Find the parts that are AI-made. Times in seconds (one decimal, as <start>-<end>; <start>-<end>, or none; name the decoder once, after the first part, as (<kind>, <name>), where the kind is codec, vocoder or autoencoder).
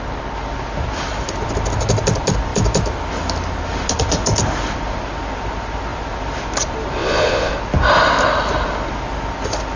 7.0-7.5 (vocoder, Vocos)